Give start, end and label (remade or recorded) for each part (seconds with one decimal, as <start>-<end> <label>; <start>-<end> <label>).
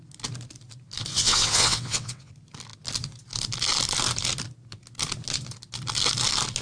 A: 0.0-1.1 recorded; 1.1-2.3 remade; 2.3-6.6 recorded